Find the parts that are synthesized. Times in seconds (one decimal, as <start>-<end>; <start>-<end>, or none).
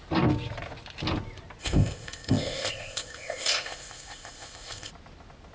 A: 1.6-4.9